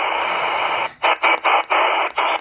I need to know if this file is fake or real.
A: real